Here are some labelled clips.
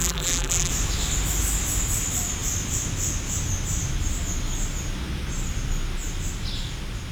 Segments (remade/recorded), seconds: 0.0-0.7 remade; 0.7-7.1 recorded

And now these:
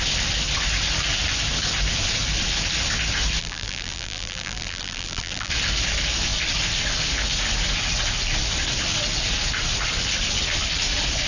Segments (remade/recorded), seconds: 0.0-3.4 recorded; 3.4-5.5 remade; 5.5-11.3 recorded